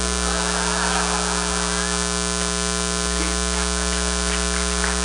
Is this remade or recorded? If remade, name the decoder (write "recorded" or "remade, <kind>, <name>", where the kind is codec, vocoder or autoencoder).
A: recorded